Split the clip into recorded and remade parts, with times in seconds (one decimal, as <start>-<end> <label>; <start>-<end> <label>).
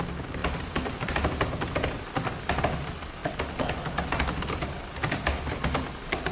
0.0-6.3 recorded